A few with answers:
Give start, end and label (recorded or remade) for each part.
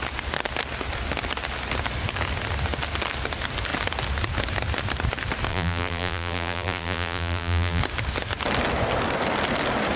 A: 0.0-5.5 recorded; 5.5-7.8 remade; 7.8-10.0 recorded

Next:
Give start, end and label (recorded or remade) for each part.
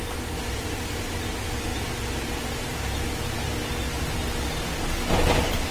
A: 0.0-5.7 recorded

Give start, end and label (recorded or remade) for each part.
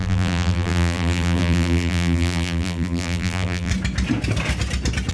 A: 0.0-3.7 remade; 3.7-5.1 recorded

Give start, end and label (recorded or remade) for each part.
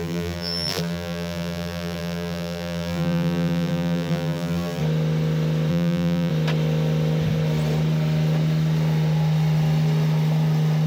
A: 0.0-4.8 remade; 4.8-5.7 recorded; 5.7-6.3 remade; 6.3-10.9 recorded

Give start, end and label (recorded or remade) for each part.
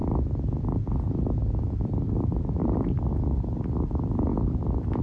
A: 0.0-2.6 recorded; 2.6-3.1 remade; 3.1-5.0 recorded